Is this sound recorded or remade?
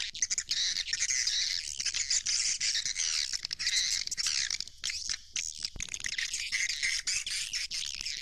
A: recorded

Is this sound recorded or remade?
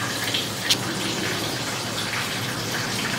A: recorded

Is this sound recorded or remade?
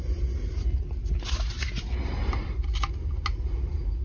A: recorded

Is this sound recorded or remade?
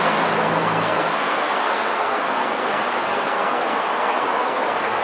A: remade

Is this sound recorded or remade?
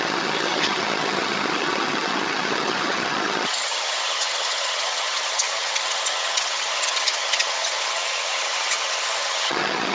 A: remade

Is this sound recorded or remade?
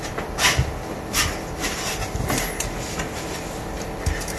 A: recorded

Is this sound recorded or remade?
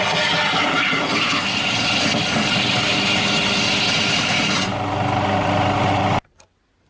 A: recorded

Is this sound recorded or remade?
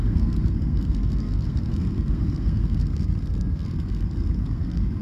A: remade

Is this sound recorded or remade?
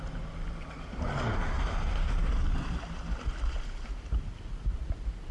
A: recorded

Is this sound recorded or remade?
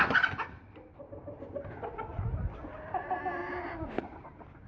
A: recorded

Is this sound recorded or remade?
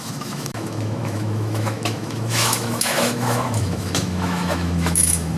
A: remade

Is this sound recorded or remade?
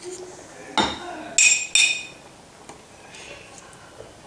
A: recorded